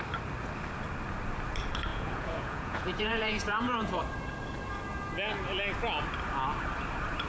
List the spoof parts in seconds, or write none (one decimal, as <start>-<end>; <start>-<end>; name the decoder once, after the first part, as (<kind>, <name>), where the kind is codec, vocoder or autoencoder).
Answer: 1.9-4.0 (vocoder, Vocos)